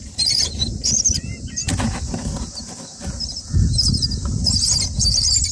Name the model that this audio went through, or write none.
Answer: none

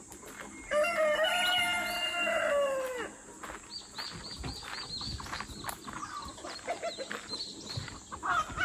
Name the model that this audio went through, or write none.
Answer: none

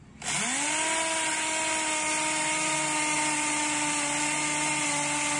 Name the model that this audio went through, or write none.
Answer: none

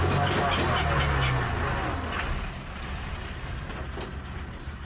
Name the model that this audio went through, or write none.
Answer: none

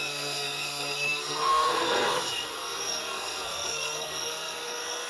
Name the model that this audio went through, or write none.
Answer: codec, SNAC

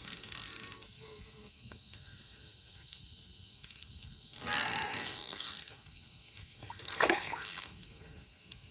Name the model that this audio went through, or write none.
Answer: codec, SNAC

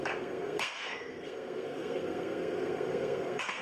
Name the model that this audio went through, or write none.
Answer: codec, SNAC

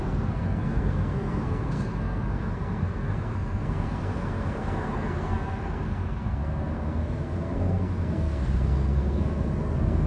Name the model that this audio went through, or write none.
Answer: codec, SNAC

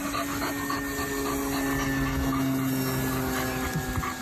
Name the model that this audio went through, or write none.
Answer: none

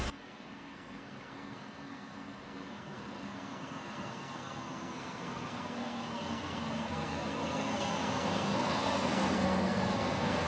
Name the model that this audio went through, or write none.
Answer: codec, SNAC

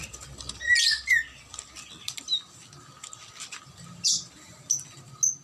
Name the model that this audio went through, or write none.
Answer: none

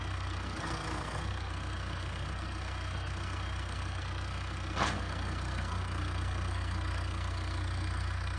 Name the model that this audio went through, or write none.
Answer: codec, SNAC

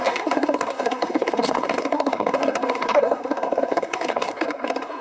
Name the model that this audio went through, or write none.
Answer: codec, SNAC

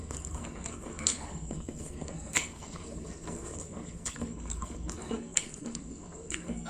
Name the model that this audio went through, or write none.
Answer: codec, SNAC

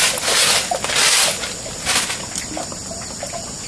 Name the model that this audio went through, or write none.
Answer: none